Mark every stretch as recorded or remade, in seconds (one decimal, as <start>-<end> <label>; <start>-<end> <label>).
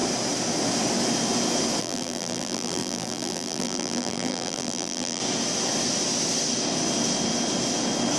0.0-1.8 recorded; 1.8-5.2 remade; 5.2-8.2 recorded